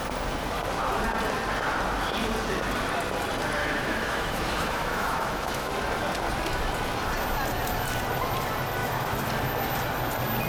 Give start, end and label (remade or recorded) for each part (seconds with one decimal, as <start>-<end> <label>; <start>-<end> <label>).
0.0-3.6 recorded; 3.6-5.7 remade; 5.7-8.8 recorded; 8.8-9.3 remade; 9.3-10.5 recorded